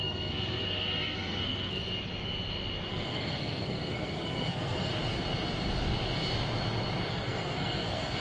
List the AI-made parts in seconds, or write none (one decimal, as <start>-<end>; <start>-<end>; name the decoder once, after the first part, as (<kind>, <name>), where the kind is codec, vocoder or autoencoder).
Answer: 0.0-1.8 (codec, SNAC); 2.9-4.9; 7.1-8.2